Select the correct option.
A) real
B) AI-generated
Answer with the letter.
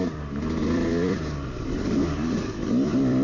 B